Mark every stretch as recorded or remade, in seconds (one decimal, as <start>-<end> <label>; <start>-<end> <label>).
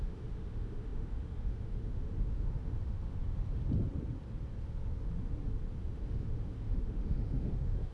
0.0-3.6 remade; 3.6-5.8 recorded; 5.8-7.9 remade